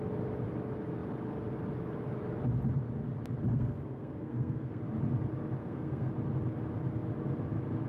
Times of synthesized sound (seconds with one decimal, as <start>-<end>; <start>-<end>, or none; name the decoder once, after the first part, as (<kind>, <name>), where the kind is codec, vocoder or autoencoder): 3.5-4.8 (codec, SNAC); 5.6-6.1